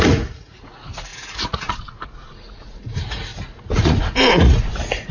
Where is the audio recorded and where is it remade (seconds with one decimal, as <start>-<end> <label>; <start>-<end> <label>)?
0.0-5.1 remade